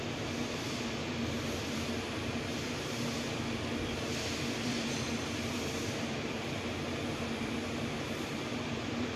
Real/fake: fake